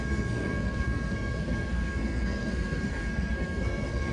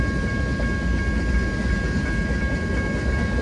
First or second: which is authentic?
second